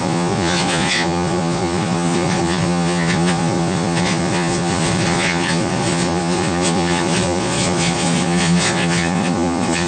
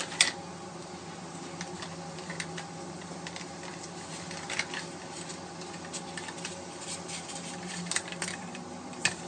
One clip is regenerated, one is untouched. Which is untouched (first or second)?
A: second